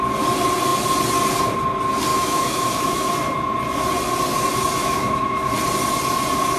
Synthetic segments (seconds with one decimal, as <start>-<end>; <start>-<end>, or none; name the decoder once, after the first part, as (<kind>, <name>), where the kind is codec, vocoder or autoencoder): 2.1-3.1 (autoencoder, DAC-VAE); 4.8-5.5